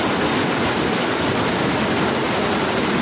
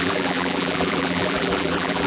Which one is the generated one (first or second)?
second